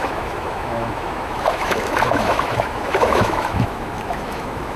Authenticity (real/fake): fake